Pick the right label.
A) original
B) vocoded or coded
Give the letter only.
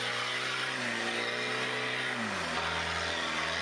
A